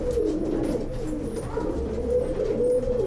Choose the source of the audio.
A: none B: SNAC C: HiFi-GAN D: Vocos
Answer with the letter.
A